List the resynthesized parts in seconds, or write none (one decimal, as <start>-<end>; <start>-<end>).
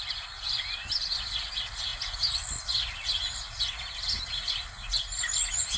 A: none